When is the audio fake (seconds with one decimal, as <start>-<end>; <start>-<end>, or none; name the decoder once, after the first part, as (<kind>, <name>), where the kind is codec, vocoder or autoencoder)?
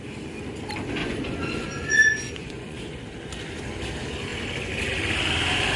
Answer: 1.0-3.0 (vocoder, Vocos)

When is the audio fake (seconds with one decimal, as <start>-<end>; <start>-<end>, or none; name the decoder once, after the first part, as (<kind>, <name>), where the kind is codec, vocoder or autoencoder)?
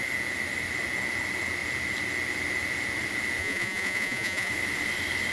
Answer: 3.4-4.5 (vocoder, Vocos)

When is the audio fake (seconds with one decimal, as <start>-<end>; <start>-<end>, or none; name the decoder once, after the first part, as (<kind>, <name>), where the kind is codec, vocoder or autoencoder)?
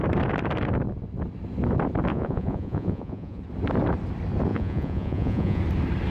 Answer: 2.1-3.4 (vocoder, Vocos); 4.5-5.6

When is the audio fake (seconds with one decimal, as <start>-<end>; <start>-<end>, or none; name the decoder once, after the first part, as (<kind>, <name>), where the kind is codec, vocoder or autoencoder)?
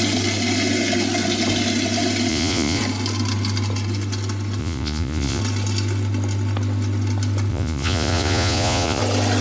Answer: 2.3-2.8 (vocoder, Vocos); 4.6-5.4; 7.5-9.0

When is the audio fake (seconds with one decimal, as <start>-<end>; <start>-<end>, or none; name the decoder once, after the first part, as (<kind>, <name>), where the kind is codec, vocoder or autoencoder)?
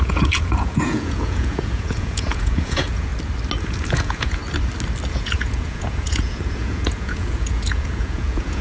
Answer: 0.0-3.1 (vocoder, Vocos); 3.6-4.4; 5.1-8.6